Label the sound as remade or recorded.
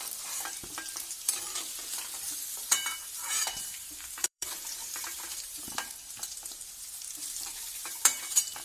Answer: remade